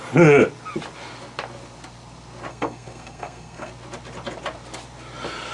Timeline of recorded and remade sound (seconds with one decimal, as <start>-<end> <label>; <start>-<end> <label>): 0.0-2.5 recorded; 2.5-3.7 remade; 3.7-5.5 recorded